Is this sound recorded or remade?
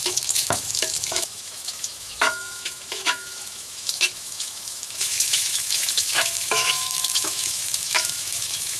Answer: remade